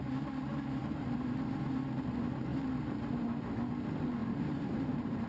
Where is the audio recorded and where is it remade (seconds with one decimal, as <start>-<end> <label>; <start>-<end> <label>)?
0.0-0.8 recorded; 0.8-1.3 remade; 1.3-2.5 recorded; 2.5-3.5 remade; 3.5-4.2 recorded; 4.2-5.3 remade